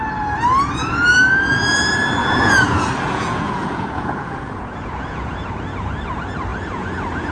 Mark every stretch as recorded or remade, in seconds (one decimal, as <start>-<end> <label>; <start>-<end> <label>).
0.0-2.2 recorded; 2.2-5.5 remade; 5.5-6.5 recorded; 6.5-7.3 remade